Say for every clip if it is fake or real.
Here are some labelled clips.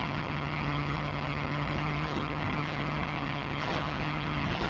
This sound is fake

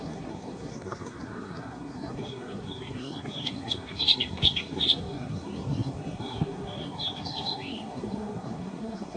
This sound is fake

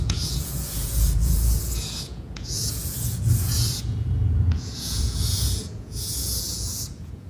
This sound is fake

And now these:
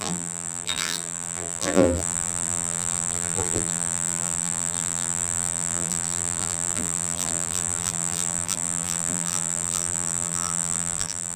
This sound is fake